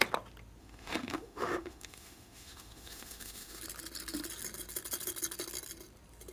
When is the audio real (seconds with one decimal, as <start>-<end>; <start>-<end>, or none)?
0.0-0.6; 3.6-6.3